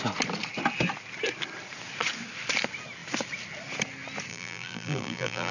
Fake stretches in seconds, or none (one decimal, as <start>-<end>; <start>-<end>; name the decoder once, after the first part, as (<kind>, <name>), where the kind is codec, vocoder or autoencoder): 4.3-5.5 (vocoder, BigVGAN v2)